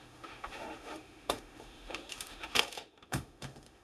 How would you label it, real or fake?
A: fake